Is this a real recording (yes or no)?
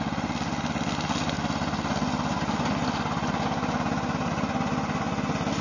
yes